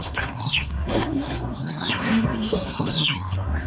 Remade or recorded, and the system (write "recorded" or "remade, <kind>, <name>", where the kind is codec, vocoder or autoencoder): remade, codec, SNAC